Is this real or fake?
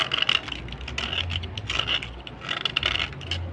real